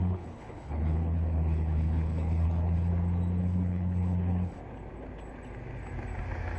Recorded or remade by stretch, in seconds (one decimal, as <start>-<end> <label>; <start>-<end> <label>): 0.0-2.9 remade; 2.9-3.4 recorded; 3.4-4.6 remade; 4.6-6.6 recorded